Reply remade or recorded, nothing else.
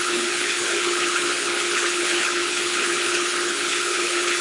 remade